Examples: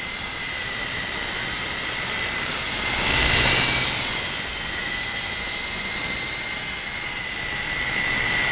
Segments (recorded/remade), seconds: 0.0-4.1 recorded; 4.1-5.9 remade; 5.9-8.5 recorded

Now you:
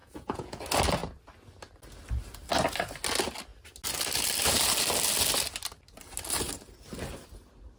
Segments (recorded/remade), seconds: 0.0-0.6 remade; 0.6-7.8 recorded